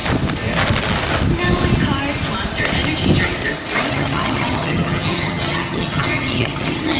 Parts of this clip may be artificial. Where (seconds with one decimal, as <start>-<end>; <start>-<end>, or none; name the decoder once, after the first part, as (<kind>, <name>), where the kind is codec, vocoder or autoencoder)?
3.9-7.0 (vocoder, HiFi-GAN)